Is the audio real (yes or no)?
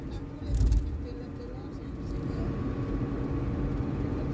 yes